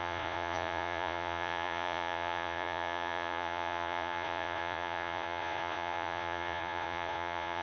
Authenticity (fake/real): fake